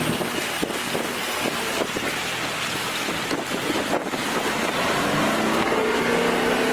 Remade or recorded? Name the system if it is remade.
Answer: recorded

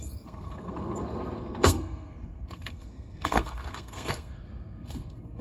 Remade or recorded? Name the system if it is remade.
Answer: remade, codec, SNAC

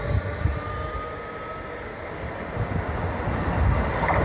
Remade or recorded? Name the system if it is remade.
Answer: recorded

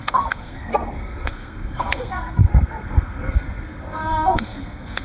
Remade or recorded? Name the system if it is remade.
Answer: remade, codec, SNAC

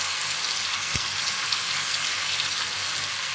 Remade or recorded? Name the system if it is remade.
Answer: remade, codec, SNAC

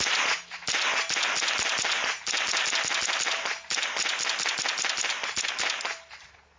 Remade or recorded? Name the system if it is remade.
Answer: recorded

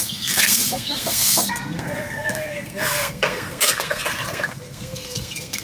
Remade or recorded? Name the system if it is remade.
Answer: remade, codec, SNAC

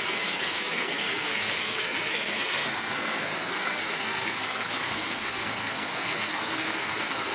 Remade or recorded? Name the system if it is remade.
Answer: remade, codec, SNAC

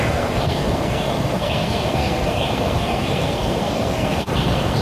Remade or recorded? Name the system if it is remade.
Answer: remade, codec, SNAC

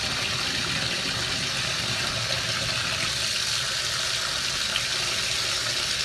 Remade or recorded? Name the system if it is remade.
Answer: recorded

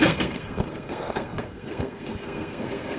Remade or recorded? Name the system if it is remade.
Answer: remade, codec, SNAC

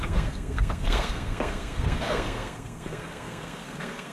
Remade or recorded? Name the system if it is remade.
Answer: remade, codec, SNAC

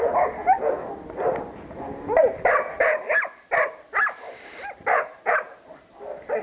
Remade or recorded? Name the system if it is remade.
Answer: recorded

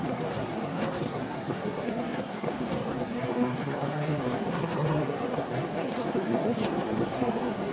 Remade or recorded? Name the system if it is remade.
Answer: remade, codec, SNAC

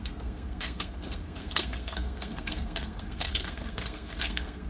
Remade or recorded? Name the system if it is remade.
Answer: remade, codec, SNAC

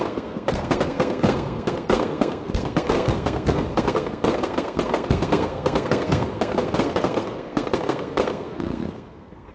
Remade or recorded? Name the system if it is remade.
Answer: remade, codec, SNAC